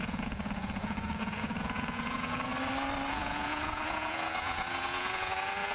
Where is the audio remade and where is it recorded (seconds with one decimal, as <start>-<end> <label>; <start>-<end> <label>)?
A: 0.0-2.5 remade; 2.5-3.1 recorded; 3.1-5.7 remade